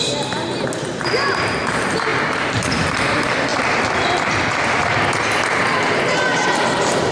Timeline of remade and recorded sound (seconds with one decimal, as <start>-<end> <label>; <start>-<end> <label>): 0.0-7.1 recorded

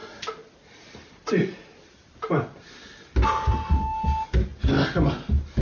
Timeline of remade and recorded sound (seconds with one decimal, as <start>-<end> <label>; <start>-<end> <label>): 0.0-5.6 recorded

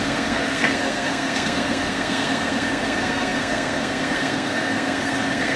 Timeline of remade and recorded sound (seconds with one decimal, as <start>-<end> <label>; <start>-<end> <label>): 0.0-5.6 remade

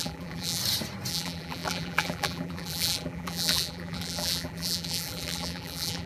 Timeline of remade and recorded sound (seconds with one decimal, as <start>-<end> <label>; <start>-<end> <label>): 0.0-0.6 remade; 0.6-1.1 recorded; 1.1-6.1 remade

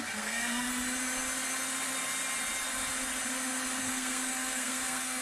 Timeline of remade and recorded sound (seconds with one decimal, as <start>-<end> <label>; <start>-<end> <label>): 0.0-0.7 remade; 0.7-3.8 recorded; 3.8-5.2 remade

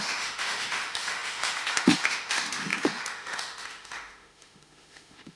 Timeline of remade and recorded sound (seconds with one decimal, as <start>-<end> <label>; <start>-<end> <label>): 0.0-5.4 remade

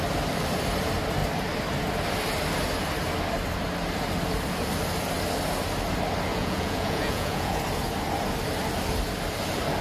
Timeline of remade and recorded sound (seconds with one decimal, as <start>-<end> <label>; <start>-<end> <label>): 0.0-6.3 recorded; 6.3-7.6 remade; 7.6-9.8 recorded

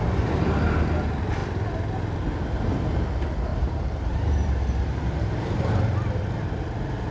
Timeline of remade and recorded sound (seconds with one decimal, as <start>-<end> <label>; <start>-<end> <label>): 0.0-3.5 recorded; 3.5-5.7 remade; 5.7-7.1 recorded